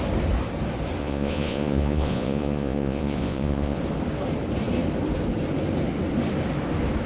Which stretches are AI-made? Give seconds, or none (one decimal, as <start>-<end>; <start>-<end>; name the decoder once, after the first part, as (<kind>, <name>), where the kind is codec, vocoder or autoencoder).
1.0-3.8 (vocoder, Vocos)